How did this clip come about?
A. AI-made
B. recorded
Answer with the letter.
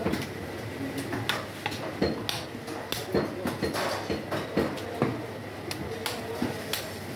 B